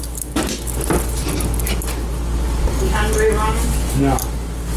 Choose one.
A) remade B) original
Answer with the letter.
B